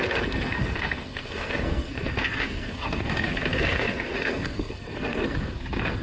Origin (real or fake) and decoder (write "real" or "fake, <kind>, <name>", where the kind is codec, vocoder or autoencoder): fake, codec, SNAC